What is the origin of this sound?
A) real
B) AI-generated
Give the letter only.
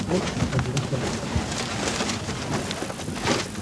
A